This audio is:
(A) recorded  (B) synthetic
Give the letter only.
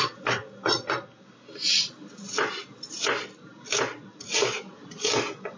B